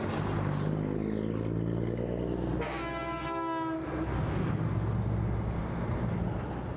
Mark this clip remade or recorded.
recorded